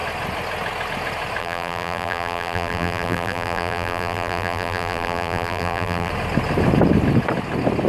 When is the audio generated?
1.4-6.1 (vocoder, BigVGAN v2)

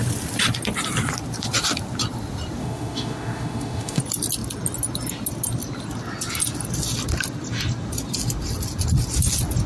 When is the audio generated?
2.6-4.0 (autoencoder, DAC-VAE)

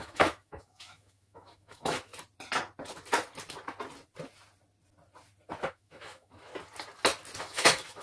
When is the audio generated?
0.0-2.1 (autoencoder, DAC-VAE); 5.7-6.5; 7.4-8.0

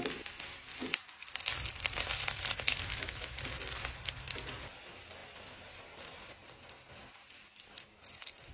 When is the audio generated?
2.9-3.4 (autoencoder, DAC-VAE)

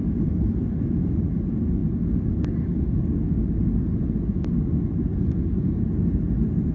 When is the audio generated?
none

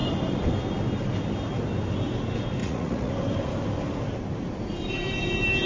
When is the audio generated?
2.6-3.1 (vocoder, Vocos)

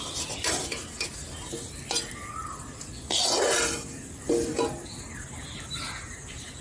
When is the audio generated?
none

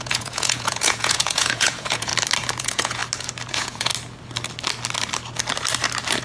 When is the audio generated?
0.0-2.1 (vocoder, Vocos); 2.6-3.0; 3.5-3.9